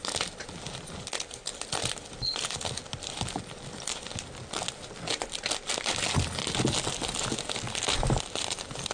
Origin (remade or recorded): recorded